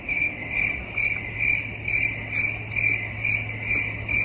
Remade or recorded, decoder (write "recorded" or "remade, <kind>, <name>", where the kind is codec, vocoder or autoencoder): recorded